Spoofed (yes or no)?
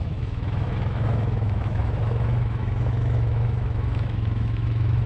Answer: yes